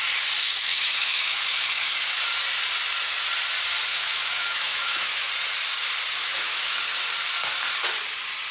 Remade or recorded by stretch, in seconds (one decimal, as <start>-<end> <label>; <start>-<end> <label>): 0.0-0.4 recorded; 0.4-2.2 remade; 2.2-3.9 recorded; 3.9-5.3 remade; 5.3-6.2 recorded; 6.2-6.8 remade; 6.8-8.5 recorded